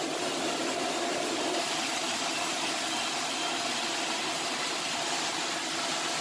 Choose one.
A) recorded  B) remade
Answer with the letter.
A